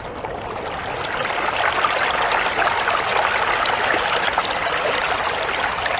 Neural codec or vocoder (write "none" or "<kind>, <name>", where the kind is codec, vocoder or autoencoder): none